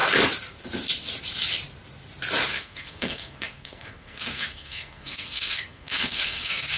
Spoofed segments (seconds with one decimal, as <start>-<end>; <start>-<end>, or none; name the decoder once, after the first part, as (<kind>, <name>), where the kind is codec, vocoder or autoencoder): 2.5-6.8 (codec, SNAC)